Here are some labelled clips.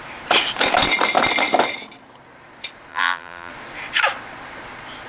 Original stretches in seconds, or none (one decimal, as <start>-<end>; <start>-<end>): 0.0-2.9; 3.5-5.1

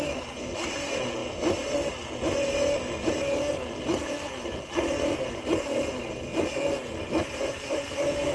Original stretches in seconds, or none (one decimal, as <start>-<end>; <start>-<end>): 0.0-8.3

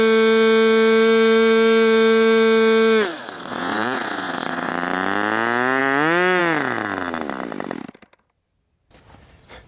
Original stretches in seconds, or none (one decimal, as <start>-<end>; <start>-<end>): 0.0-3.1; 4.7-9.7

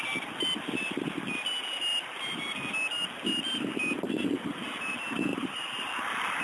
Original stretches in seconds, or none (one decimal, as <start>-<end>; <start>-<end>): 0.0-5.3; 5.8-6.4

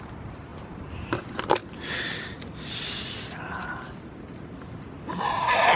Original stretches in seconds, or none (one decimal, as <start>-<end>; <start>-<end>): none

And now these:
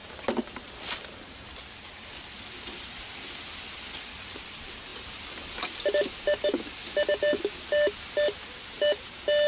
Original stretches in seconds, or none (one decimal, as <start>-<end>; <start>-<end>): 0.8-4.9; 5.5-9.5